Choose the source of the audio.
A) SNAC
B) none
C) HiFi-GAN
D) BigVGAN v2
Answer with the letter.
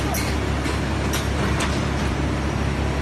B